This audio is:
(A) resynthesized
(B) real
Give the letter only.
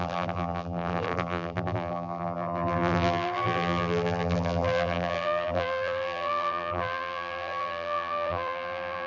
A